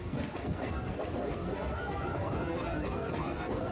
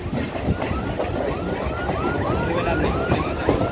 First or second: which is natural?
second